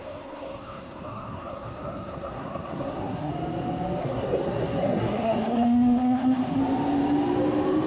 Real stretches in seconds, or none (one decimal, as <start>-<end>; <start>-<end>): 3.3-4.0; 6.6-7.9